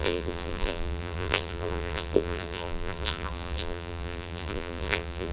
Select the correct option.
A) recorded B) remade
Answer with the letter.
B